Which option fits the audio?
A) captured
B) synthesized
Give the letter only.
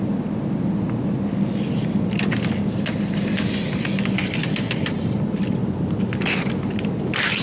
A